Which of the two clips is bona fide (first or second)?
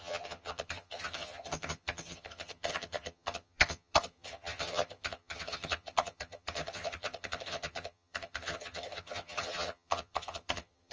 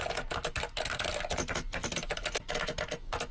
second